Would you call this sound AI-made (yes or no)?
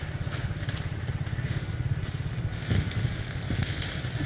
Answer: no